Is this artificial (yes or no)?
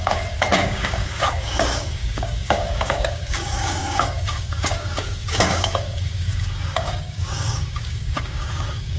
yes